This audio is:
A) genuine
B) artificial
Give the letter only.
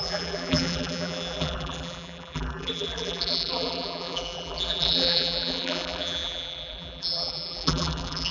B